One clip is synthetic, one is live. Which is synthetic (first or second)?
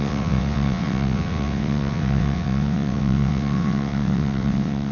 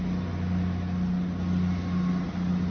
first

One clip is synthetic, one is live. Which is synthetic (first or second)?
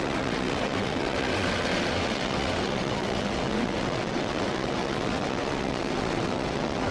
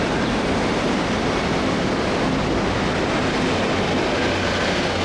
first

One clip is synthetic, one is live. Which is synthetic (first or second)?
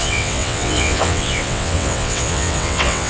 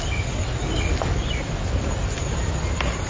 first